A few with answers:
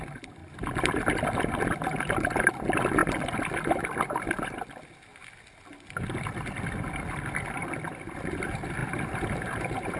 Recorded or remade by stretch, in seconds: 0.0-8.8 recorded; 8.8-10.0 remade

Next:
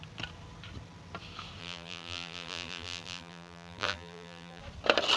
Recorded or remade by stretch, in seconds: 0.0-1.6 recorded; 1.6-4.6 remade; 4.6-5.2 recorded

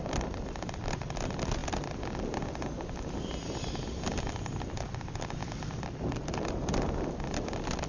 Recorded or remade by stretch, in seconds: 0.0-1.6 remade; 1.6-4.3 recorded; 4.3-5.4 remade; 5.4-6.0 recorded; 6.0-7.9 remade

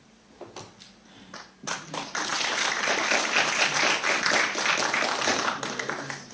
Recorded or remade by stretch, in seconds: 0.0-6.3 recorded

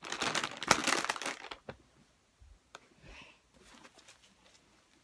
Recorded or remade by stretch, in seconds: 0.0-5.0 recorded

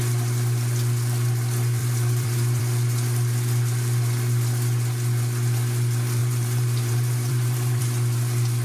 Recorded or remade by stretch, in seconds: 0.0-1.8 recorded; 1.8-2.6 remade; 2.6-6.2 recorded; 6.2-7.8 remade; 7.8-8.6 recorded